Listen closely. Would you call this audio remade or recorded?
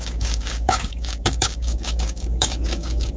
remade